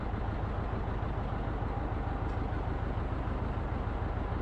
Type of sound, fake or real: real